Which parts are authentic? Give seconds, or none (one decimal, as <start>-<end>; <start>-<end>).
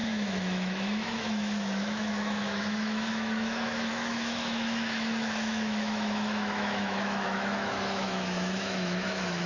none